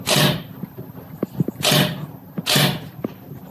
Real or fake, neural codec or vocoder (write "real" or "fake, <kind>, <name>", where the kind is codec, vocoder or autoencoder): real